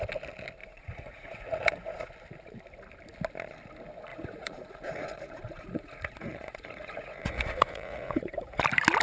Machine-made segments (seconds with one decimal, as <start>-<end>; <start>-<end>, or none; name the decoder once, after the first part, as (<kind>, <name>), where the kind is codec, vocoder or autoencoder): 0.6-2.1 (vocoder, Vocos); 4.1-8.6